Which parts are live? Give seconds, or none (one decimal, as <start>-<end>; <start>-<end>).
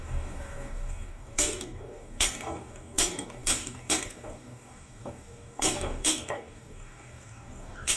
none